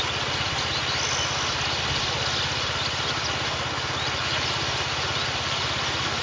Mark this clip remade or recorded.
recorded